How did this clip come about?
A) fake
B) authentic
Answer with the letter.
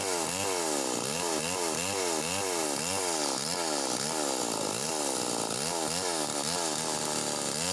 B